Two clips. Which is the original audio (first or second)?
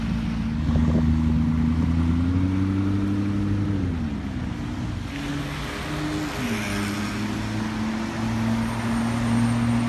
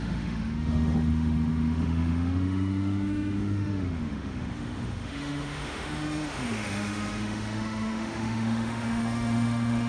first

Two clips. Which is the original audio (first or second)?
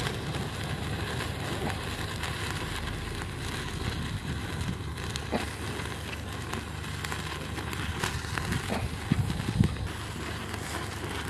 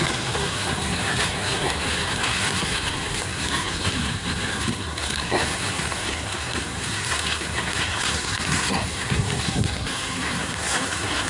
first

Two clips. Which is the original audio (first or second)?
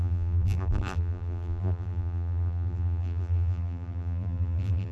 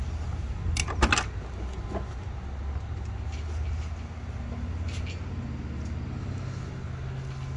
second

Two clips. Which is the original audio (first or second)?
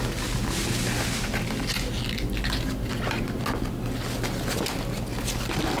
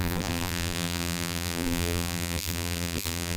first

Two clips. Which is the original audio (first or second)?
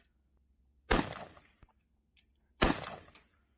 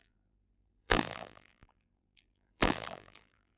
first